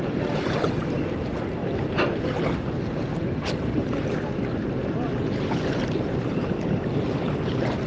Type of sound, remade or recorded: remade